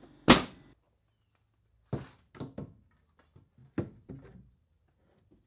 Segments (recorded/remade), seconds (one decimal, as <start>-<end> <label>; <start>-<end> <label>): 0.0-5.5 recorded